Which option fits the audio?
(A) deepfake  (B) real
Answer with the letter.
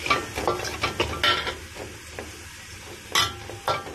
B